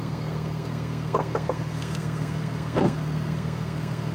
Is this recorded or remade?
remade